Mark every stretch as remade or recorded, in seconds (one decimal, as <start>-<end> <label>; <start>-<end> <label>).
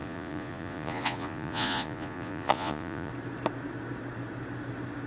0.0-3.1 remade; 3.1-5.1 recorded